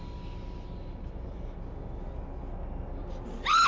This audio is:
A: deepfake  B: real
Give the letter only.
B